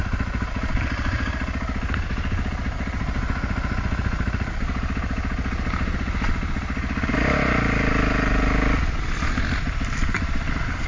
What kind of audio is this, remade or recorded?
recorded